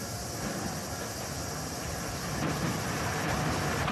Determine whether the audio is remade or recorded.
recorded